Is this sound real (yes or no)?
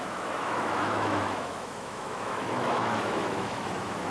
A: no